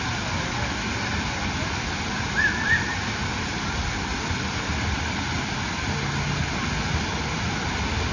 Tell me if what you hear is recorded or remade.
recorded